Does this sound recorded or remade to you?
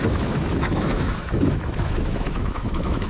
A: remade